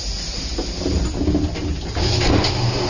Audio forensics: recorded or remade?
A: recorded